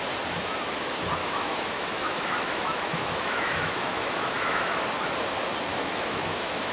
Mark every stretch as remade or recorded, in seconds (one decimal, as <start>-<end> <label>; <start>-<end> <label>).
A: 0.0-1.2 recorded; 1.2-4.8 remade; 4.8-5.7 recorded; 5.7-6.7 remade